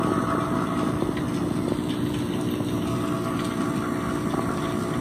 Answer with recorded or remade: recorded